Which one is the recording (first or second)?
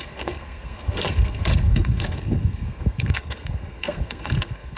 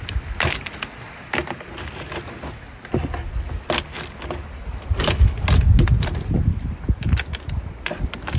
second